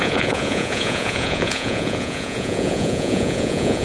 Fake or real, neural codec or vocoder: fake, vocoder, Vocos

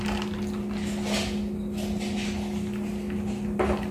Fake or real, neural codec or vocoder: real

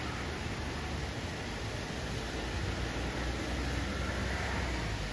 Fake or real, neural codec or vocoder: real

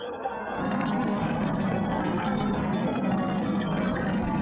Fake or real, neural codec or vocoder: fake, codec, SNAC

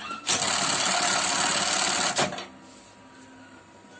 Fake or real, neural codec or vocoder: real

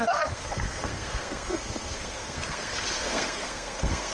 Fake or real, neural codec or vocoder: fake, codec, SNAC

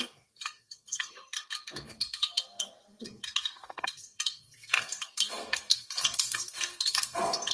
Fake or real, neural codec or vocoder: fake, codec, SNAC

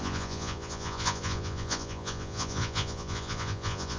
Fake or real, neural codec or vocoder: fake, vocoder, Vocos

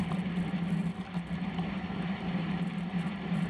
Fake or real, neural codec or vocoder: real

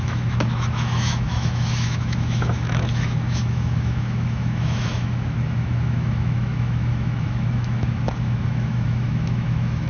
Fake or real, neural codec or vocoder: fake, autoencoder, DAC-VAE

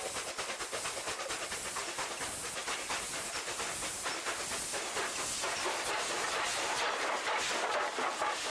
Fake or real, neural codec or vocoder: real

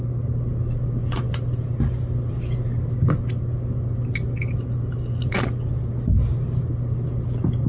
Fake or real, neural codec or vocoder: real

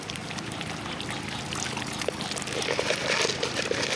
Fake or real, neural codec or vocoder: fake, vocoder, BigVGAN v2